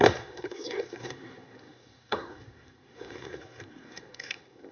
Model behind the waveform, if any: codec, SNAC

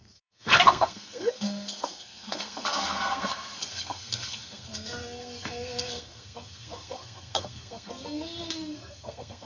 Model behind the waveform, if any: codec, SNAC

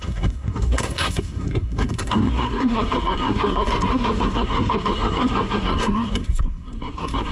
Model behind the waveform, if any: codec, SNAC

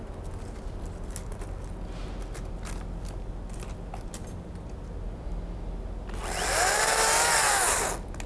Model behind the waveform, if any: none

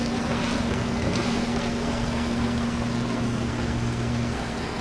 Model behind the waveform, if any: codec, SNAC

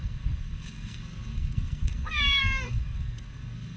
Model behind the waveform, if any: codec, SNAC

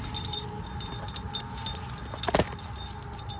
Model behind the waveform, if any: none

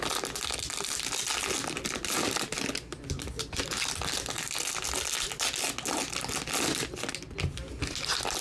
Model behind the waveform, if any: none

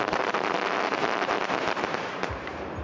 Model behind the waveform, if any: none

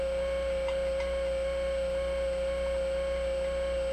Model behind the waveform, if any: none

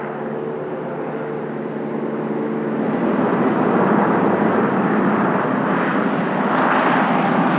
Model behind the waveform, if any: none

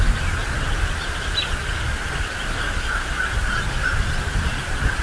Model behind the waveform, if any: none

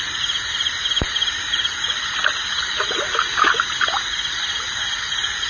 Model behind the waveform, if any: none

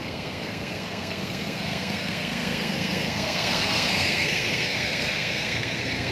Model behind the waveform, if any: codec, SNAC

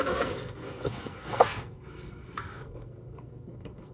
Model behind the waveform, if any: codec, SNAC